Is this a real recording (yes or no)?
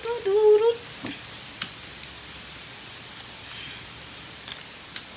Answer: yes